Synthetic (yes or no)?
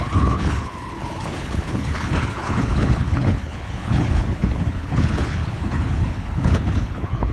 yes